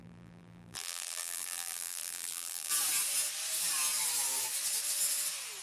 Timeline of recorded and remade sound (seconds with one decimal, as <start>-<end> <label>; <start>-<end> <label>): 0.0-2.7 remade; 2.7-5.6 recorded